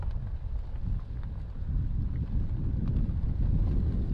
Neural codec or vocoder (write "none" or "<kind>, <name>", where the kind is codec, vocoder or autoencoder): none